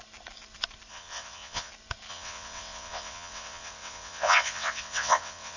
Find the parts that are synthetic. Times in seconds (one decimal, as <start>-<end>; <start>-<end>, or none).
0.9-1.7; 2.1-5.6